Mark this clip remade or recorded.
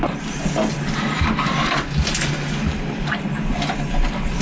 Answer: recorded